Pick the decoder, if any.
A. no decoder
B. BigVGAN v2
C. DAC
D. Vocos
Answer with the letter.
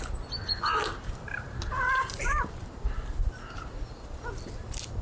A